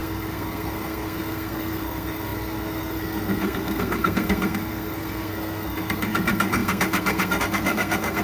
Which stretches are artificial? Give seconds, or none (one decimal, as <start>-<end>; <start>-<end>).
0.0-8.2